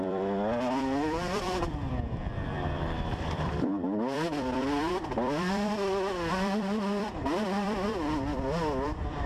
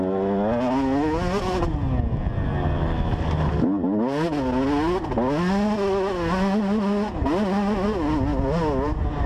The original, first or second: second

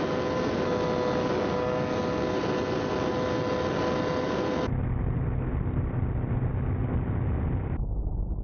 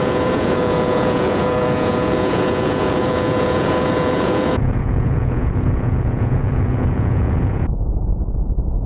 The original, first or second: first